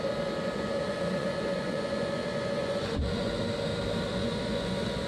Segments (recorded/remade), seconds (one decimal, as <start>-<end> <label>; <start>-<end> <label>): 0.0-0.4 recorded; 0.4-3.4 remade; 3.4-4.1 recorded; 4.1-5.1 remade